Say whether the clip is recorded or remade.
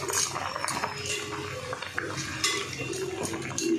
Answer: recorded